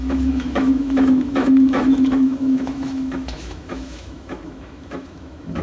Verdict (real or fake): fake